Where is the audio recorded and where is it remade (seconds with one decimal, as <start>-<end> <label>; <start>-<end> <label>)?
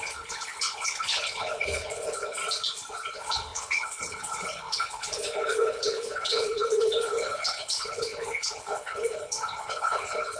0.0-2.4 remade; 2.4-3.1 recorded; 3.1-10.4 remade